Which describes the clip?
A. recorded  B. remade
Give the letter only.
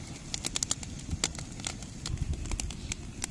A